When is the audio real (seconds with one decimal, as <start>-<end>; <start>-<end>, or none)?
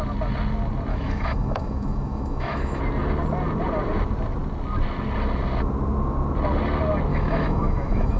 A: 0.0-0.9; 2.8-7.1